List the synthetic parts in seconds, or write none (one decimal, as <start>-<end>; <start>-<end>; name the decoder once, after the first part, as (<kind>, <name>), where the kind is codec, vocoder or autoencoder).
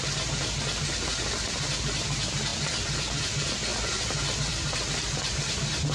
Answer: 2.5-3.2 (vocoder, BigVGAN v2); 3.7-4.9